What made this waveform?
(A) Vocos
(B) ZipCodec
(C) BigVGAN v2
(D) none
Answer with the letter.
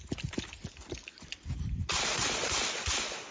D